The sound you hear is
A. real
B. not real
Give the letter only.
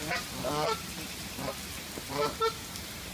A